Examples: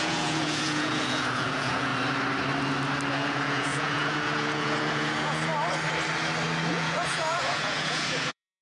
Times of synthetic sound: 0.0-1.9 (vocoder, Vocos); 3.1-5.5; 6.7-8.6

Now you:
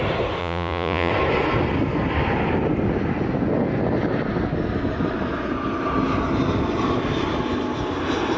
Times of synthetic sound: 0.4-1.1 (vocoder, Vocos)

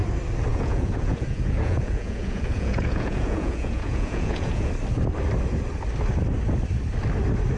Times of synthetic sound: 0.5-4.7 (vocoder, Vocos)

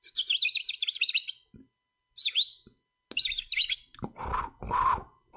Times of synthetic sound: none